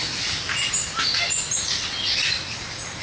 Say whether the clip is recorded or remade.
recorded